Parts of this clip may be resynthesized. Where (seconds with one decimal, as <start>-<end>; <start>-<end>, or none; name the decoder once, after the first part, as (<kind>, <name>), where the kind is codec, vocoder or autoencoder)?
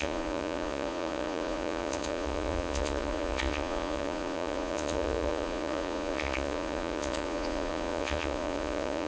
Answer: 0.0-9.1 (vocoder, Vocos)